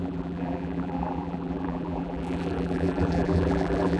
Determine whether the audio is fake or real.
fake